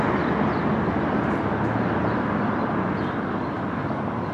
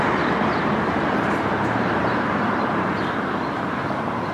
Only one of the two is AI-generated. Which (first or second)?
second